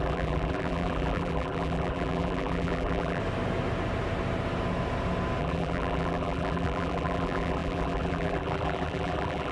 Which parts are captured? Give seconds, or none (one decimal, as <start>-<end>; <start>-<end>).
3.2-5.4